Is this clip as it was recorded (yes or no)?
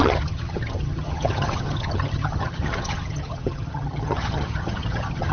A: no